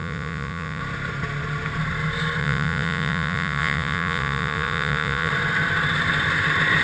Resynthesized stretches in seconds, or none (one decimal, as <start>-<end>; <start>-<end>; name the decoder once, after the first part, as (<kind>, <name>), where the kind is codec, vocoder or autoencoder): 0.0-0.8 (vocoder, Vocos); 2.4-5.3